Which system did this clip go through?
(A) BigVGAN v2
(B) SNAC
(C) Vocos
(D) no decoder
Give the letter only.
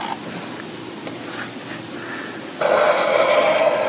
D